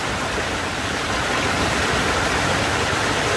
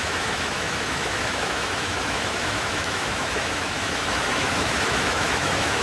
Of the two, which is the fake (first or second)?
second